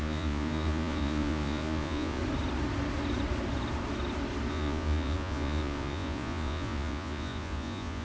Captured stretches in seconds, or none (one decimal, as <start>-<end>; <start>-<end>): 2.2-4.5